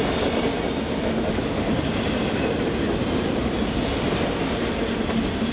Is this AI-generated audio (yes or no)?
no